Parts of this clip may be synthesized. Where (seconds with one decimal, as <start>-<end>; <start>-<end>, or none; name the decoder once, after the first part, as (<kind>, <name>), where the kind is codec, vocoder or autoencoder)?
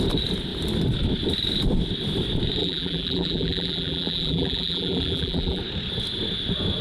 2.6-5.6 (vocoder, BigVGAN v2)